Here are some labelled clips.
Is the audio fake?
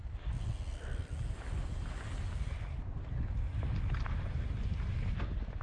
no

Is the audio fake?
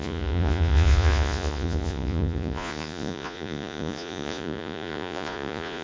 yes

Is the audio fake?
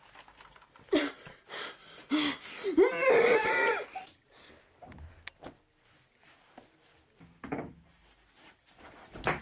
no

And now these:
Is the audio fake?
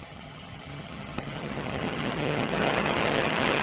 yes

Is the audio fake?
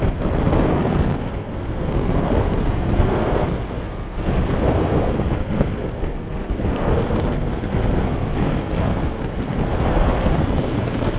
yes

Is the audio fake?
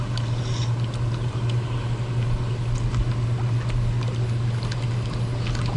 no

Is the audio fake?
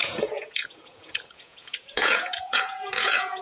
yes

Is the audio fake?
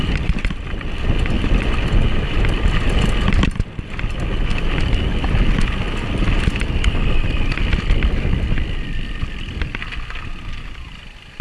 no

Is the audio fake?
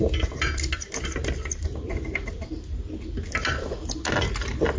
no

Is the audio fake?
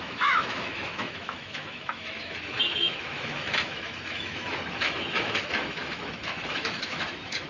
yes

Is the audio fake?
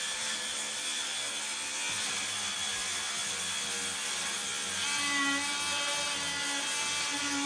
no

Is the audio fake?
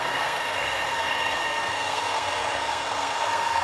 yes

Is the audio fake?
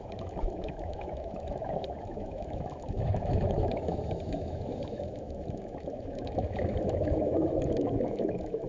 yes